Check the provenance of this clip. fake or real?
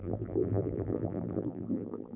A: fake